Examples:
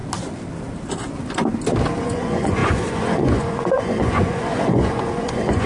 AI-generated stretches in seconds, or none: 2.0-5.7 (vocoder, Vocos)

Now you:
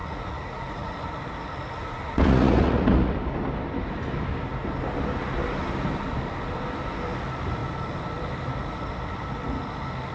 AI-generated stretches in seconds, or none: 0.0-0.9 (vocoder, Vocos); 1.8-3.1